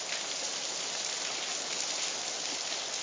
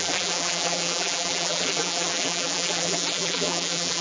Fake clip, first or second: second